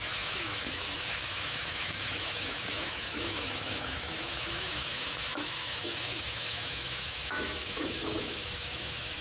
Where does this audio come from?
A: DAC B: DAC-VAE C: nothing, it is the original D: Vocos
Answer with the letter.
B